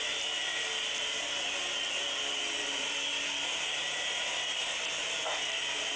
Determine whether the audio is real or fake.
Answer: real